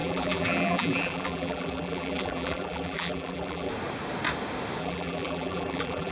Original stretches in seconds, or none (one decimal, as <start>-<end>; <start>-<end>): 3.7-4.8